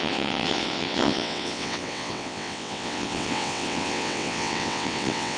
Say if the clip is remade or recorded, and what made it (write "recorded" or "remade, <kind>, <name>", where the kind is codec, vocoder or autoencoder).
remade, vocoder, WaveNeXt